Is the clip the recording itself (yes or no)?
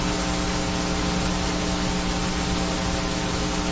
yes